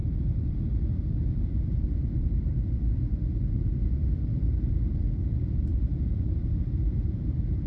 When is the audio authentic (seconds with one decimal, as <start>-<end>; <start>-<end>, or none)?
none